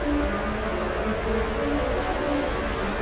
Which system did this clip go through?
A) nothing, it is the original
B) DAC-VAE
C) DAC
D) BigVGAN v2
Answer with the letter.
A